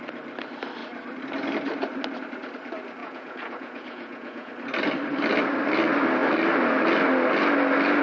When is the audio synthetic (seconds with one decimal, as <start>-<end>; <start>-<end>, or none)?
3.0-4.5